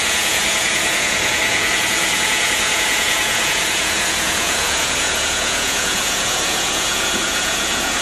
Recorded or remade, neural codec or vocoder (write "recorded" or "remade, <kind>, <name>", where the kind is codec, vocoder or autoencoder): remade, vocoder, Vocos